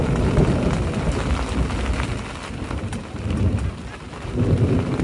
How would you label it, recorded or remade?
recorded